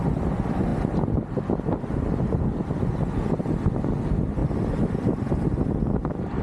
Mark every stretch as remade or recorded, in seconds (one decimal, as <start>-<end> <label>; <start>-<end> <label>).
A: 0.0-4.4 recorded; 4.4-6.4 remade